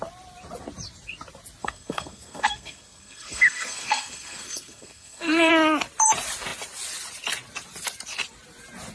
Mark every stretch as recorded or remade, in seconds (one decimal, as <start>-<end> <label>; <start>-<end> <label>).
0.0-1.6 recorded; 1.6-5.5 remade; 5.5-8.9 recorded